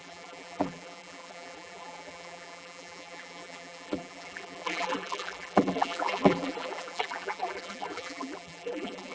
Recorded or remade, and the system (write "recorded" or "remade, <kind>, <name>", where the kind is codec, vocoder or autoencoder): remade, vocoder, BigVGAN v2